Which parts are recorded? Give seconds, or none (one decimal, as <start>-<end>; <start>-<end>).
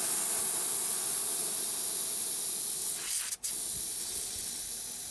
0.0-2.8; 3.3-4.0; 4.6-5.1